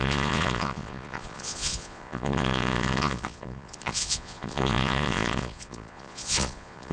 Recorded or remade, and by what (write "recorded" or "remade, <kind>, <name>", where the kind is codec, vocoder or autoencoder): remade, vocoder, Vocos